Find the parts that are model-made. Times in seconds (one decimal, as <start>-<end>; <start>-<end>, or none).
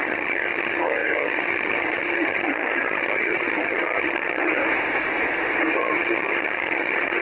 0.0-4.6; 5.7-7.2